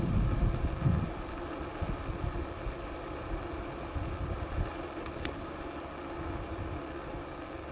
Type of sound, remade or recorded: recorded